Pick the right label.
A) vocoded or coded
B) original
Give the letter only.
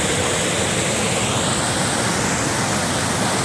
B